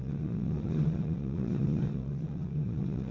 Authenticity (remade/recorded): remade